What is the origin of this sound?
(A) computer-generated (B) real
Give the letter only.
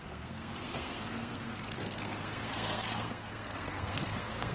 A